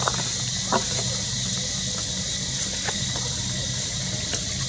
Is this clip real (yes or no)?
yes